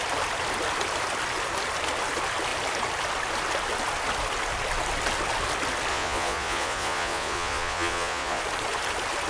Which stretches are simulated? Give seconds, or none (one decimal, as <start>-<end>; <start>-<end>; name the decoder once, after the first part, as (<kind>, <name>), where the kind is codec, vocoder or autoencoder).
5.9-8.4 (vocoder, Vocos)